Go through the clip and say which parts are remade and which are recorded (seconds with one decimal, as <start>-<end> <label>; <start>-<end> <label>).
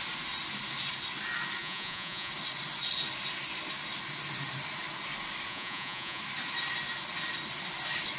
0.0-1.6 recorded; 1.6-2.3 remade; 2.3-5.5 recorded; 5.5-6.2 remade; 6.2-8.2 recorded